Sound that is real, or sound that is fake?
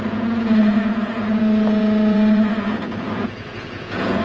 fake